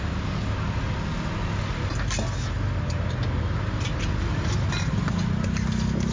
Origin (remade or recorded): recorded